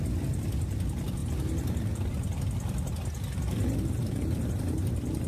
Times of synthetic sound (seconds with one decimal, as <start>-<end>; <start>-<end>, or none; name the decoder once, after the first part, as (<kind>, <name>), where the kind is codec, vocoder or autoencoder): none